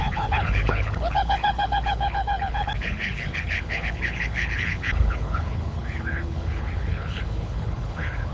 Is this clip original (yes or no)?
no